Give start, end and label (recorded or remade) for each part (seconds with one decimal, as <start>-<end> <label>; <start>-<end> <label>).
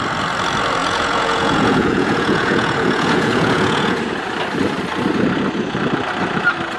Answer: 0.0-0.8 recorded; 0.8-4.0 remade; 4.0-6.8 recorded